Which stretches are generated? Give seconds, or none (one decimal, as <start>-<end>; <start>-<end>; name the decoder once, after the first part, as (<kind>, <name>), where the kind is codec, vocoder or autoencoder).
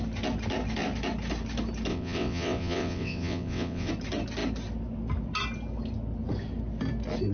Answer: 1.9-3.9 (vocoder, WaveNeXt)